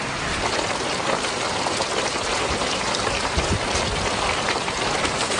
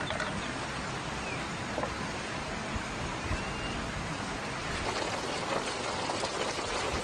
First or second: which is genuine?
second